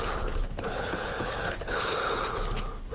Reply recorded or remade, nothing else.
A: remade